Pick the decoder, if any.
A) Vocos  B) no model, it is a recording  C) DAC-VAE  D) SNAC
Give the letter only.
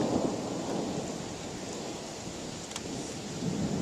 B